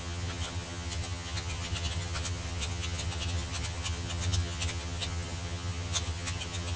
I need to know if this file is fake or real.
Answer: fake